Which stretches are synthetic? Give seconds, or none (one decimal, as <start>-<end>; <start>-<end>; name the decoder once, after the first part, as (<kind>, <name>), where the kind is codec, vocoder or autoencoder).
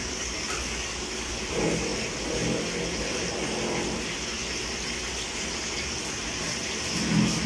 0.0-1.3 (codec, DAC)